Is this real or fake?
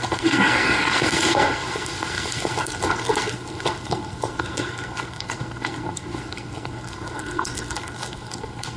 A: fake